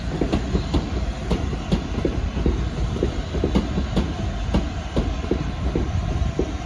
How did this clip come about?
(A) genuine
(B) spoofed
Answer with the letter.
A